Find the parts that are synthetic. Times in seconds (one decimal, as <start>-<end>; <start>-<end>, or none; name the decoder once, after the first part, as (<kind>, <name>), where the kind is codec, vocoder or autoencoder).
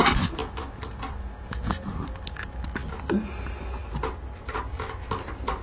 none